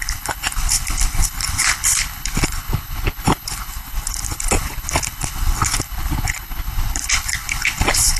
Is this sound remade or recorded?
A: remade